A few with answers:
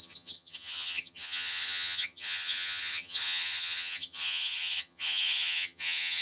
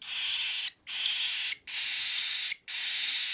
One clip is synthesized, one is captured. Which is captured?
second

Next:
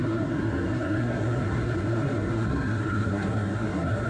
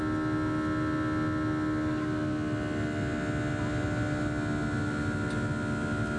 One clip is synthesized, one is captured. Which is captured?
second